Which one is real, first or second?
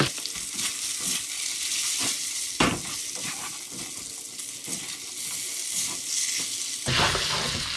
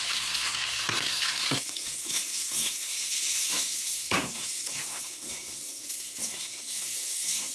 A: first